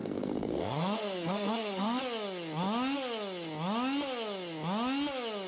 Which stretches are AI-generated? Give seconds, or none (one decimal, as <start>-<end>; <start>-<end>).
0.0-2.0